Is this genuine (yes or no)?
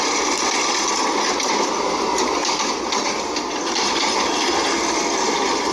yes